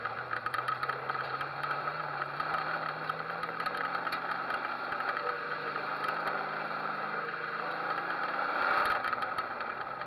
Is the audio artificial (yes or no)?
yes